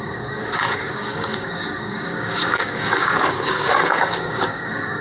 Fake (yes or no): yes